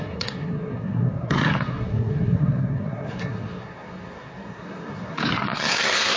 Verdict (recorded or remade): remade